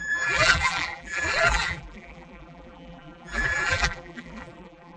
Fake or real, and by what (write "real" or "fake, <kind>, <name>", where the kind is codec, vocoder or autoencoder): fake, vocoder, BigVGAN v2